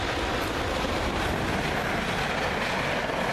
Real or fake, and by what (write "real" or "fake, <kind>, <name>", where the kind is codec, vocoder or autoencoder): real